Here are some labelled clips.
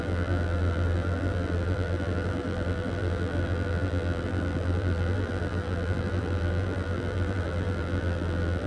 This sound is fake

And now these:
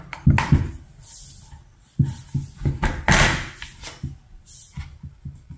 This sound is real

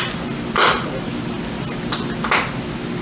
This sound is real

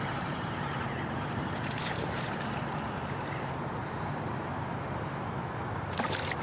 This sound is fake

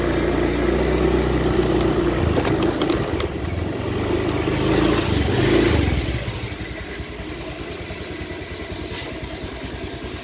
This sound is real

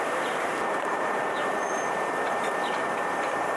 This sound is fake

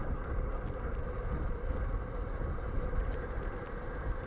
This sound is fake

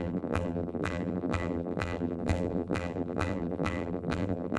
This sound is fake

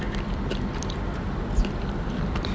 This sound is fake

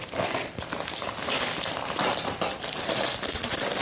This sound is real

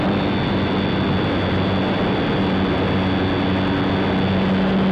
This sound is real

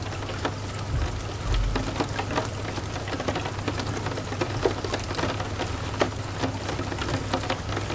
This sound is real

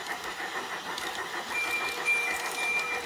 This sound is fake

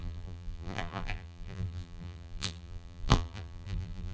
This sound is fake